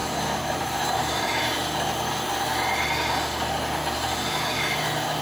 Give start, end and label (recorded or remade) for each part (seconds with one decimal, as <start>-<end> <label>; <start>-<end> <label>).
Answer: 0.0-1.4 remade; 1.4-5.2 recorded